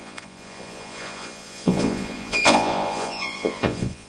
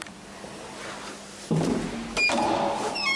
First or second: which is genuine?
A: second